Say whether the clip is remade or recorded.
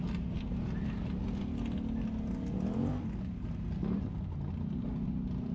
recorded